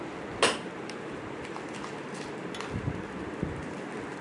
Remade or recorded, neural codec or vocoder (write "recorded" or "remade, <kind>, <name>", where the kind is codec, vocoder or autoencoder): recorded